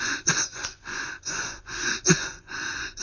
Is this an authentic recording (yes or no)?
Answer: no